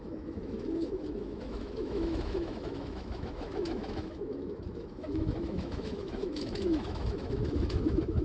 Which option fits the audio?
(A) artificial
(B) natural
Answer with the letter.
A